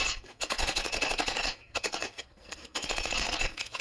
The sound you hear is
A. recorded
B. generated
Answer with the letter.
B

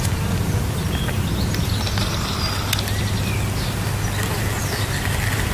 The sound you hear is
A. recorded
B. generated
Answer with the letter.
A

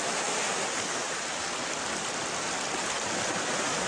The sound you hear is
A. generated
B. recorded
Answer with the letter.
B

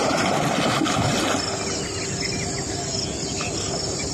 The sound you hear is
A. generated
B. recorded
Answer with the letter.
B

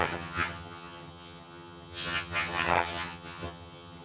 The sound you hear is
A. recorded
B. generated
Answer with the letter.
B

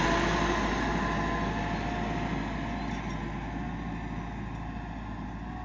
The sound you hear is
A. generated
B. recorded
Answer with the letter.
B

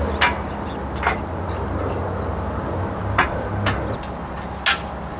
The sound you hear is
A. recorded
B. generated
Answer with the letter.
A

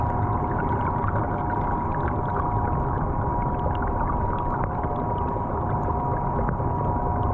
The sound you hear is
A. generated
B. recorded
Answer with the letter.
B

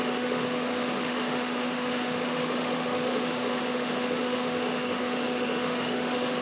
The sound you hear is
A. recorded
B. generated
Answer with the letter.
B